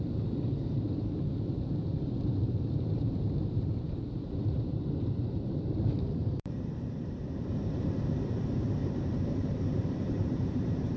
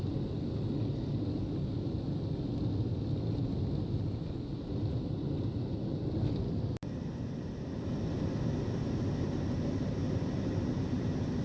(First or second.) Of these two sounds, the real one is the second